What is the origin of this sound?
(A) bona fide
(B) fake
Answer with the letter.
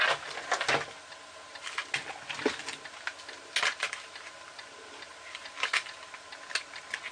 A